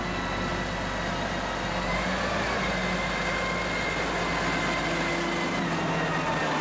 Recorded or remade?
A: recorded